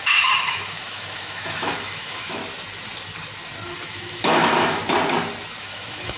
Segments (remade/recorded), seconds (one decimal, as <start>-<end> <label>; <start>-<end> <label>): 0.0-2.4 remade; 2.4-3.8 recorded; 3.8-4.8 remade; 4.8-5.6 recorded; 5.6-6.2 remade

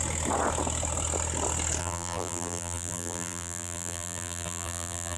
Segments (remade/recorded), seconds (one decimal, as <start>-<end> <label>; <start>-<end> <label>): 0.0-1.8 recorded; 1.8-5.2 remade

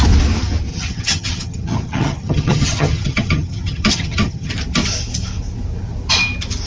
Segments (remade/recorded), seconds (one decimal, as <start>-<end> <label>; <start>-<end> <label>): 0.0-0.7 recorded; 0.7-4.5 remade; 4.5-6.7 recorded

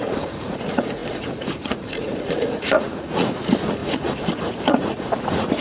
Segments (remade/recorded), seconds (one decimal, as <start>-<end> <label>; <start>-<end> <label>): 0.0-5.6 remade

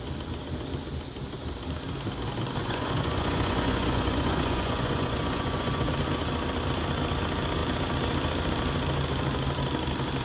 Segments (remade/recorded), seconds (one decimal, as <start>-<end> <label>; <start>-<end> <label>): 0.0-2.6 recorded; 2.6-5.9 remade; 5.9-10.2 recorded

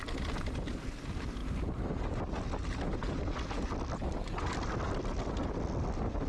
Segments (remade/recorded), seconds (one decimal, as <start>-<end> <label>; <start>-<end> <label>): 0.0-6.3 recorded

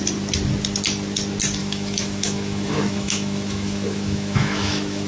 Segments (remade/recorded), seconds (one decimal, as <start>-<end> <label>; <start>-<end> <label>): 0.0-1.6 recorded; 1.6-5.1 remade

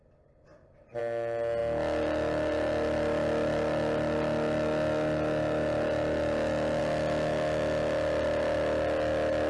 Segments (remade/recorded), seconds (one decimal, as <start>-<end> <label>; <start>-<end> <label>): 0.0-9.5 recorded